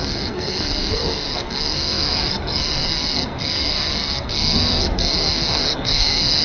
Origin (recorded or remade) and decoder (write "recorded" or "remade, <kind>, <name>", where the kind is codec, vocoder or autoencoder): remade, codec, SNAC